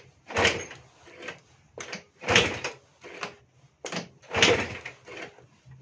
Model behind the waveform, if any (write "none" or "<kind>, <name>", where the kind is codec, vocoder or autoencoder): none